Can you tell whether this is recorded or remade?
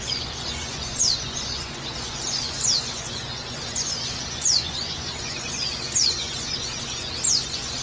remade